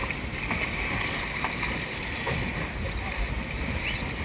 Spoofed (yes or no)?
no